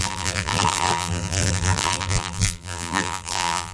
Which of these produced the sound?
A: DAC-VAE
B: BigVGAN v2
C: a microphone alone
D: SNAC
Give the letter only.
B